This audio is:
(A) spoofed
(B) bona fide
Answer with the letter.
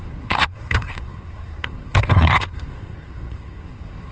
A